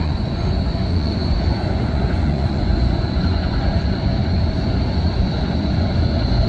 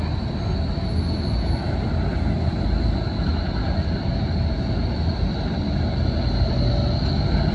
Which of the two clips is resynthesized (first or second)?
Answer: first